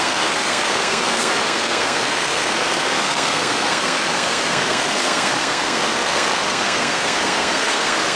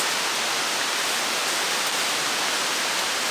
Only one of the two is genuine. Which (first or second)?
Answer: second